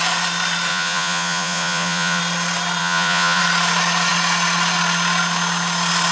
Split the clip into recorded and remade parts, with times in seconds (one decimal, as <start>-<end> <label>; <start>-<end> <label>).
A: 0.0-0.7 recorded; 0.7-2.2 remade; 2.2-2.8 recorded; 2.8-3.4 remade; 3.4-6.1 recorded